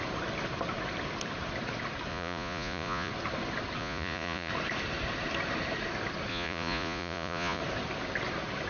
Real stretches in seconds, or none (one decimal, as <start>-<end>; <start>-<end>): 0.0-2.1; 3.1-3.8; 4.5-6.3; 7.6-8.7